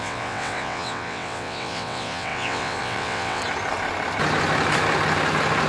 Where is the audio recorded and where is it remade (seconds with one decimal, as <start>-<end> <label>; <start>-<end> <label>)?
0.0-3.4 remade; 3.4-5.7 recorded